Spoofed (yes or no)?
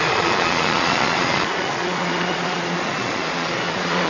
yes